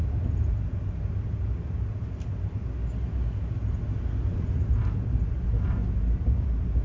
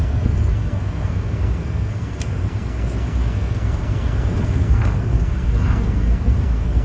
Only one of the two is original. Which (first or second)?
first